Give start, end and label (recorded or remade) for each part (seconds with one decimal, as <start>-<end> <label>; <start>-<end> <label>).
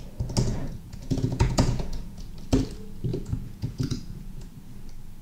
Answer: 0.0-0.5 recorded; 0.5-2.3 remade; 2.3-3.1 recorded; 3.1-4.5 remade; 4.5-5.2 recorded